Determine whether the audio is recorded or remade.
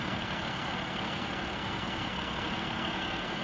remade